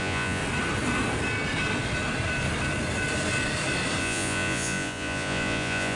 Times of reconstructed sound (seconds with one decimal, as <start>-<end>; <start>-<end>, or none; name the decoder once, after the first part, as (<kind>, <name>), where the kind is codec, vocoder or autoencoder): 0.0-0.4 (vocoder, Vocos); 4.0-6.0